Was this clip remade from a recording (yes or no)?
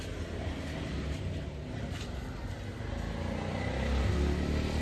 no